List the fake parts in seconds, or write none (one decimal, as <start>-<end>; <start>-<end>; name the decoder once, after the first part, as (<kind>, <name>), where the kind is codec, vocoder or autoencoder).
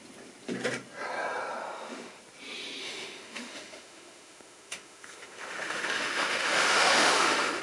1.6-2.2 (autoencoder, DAC-VAE); 2.8-7.6